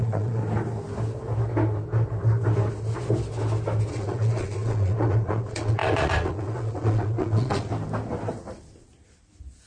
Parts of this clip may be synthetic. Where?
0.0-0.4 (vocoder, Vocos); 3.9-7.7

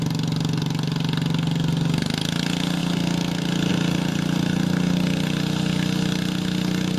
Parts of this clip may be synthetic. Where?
none

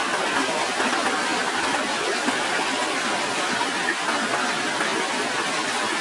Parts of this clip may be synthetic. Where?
none

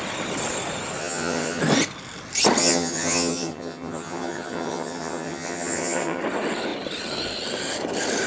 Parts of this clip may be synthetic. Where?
1.0-1.6 (vocoder, HiFi-GAN); 2.6-6.2

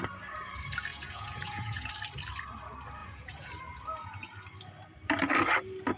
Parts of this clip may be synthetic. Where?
0.9-1.9 (vocoder, Vocos); 3.0-3.5

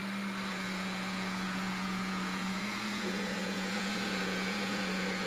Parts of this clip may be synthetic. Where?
0.5-5.3 (vocoder, Vocos)